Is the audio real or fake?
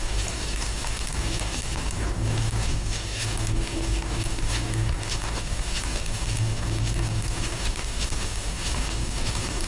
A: fake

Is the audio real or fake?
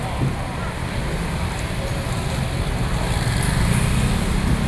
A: real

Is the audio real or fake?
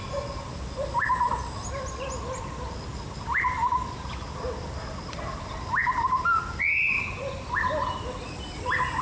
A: real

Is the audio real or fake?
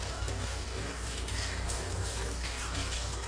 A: fake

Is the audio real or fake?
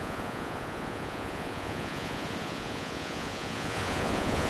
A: fake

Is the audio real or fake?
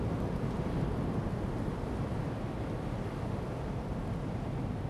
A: real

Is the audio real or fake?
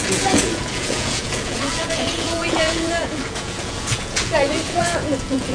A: fake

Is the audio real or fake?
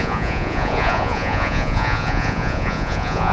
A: fake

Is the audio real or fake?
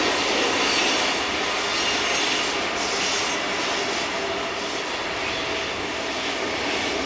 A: real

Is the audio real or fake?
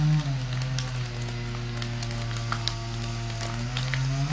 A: real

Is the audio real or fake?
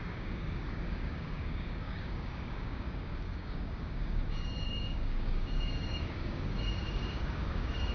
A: fake